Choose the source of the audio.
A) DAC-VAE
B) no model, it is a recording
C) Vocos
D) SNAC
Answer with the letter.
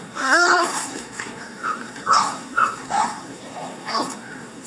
D